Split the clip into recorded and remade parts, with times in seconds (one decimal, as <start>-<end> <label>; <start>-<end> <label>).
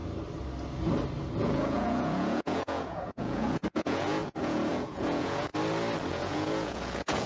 0.0-1.4 recorded; 1.4-5.5 remade; 5.5-6.1 recorded; 6.1-7.3 remade